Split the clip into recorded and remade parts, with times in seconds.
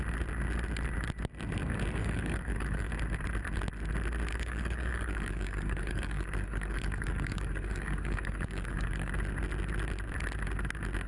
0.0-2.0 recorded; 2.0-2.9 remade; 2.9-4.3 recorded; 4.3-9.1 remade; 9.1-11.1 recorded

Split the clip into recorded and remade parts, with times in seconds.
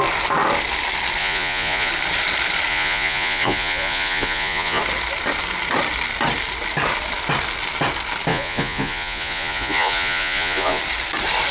0.0-1.2 recorded; 1.2-1.9 remade; 1.9-2.7 recorded; 2.7-4.8 remade; 4.8-8.3 recorded; 8.3-10.8 remade; 10.8-11.5 recorded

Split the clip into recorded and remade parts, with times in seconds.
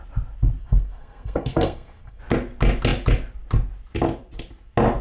0.0-0.6 recorded; 0.6-2.2 remade; 2.2-5.0 recorded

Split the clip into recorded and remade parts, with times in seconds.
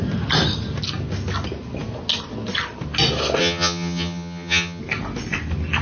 0.0-3.4 recorded; 3.4-4.8 remade; 4.8-5.8 recorded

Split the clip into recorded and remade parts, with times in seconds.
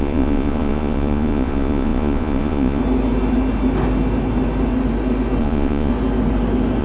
0.0-2.8 remade; 2.8-5.4 recorded; 5.4-5.9 remade; 5.9-6.8 recorded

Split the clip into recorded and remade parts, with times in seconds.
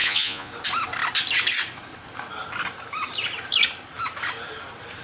0.0-0.5 remade; 0.5-5.0 recorded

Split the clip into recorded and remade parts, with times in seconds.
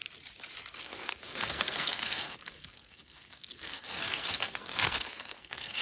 0.0-0.8 recorded; 0.8-5.8 remade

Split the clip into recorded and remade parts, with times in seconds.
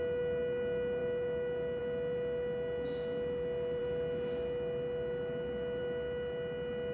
0.0-6.9 recorded